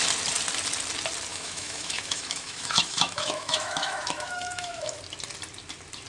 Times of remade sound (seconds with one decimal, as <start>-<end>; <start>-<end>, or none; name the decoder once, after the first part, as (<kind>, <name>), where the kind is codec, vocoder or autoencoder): 1.3-5.0 (autoencoder, DAC-VAE)